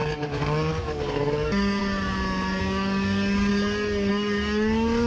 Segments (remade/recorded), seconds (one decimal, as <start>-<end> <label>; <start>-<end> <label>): 0.0-1.8 remade; 1.8-2.6 recorded; 2.6-3.5 remade; 3.5-4.1 recorded; 4.1-5.1 remade